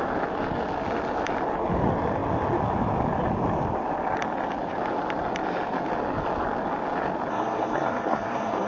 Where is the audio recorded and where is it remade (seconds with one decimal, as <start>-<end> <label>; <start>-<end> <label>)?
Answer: 0.0-7.3 recorded; 7.3-8.7 remade